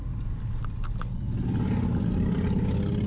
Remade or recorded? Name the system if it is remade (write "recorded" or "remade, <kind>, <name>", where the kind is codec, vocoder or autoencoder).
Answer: recorded